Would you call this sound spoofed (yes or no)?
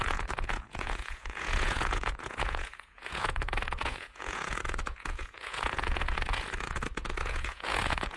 yes